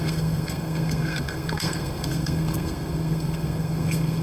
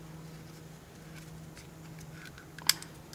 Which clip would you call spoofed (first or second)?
first